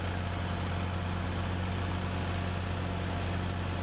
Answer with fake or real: real